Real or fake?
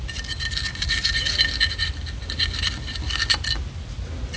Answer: real